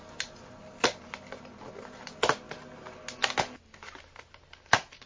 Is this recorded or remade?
recorded